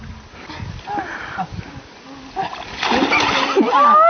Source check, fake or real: real